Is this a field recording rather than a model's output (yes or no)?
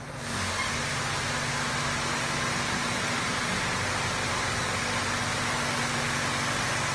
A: yes